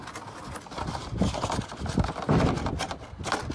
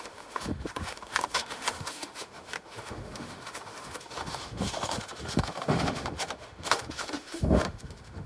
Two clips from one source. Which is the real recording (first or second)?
first